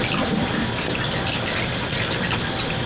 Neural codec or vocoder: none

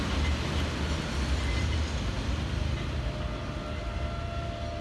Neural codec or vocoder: none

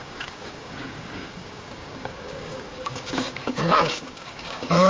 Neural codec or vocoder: codec, DAC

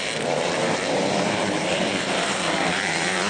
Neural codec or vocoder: vocoder, BigVGAN v2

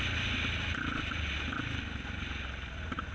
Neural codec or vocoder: none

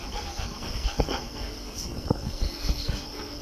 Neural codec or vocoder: codec, SNAC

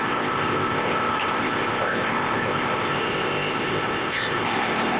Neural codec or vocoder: codec, ZipCodec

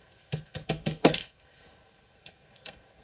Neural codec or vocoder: codec, SNAC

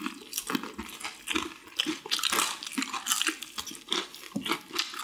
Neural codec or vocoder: none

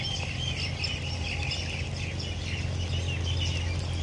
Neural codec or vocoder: none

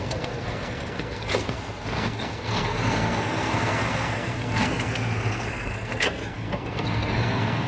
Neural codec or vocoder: codec, SNAC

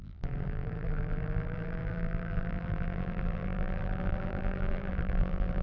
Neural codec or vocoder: vocoder, BigVGAN v2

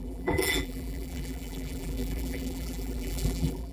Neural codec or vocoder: vocoder, BigVGAN v2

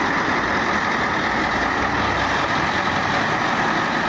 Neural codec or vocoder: none